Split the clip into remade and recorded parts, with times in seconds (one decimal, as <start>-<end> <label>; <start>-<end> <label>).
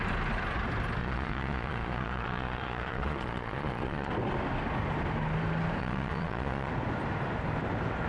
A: 0.0-1.0 recorded; 1.0-4.1 remade; 4.1-5.8 recorded; 5.8-6.7 remade; 6.7-8.1 recorded